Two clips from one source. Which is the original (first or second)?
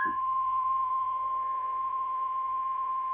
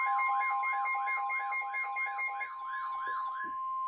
second